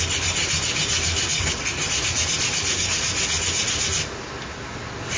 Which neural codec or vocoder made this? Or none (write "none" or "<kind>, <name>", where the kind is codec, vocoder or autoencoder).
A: none